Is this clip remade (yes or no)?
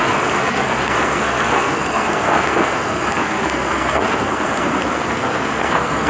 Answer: yes